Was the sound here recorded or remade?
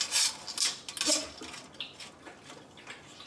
recorded